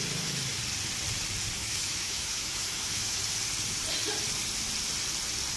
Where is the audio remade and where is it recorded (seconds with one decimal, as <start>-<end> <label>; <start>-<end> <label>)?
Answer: 0.0-1.6 recorded; 1.6-3.2 remade; 3.2-5.6 recorded